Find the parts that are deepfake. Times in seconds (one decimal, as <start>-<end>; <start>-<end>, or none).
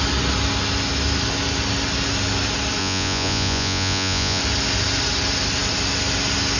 2.8-4.4